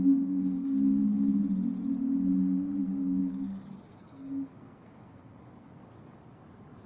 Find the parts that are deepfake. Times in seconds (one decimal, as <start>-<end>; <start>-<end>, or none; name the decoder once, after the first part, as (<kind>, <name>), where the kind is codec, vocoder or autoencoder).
0.0-1.4 (codec, SNAC); 2.8-6.9